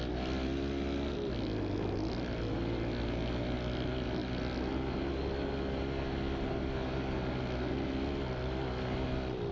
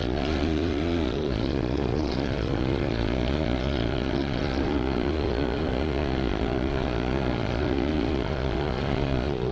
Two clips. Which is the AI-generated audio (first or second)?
second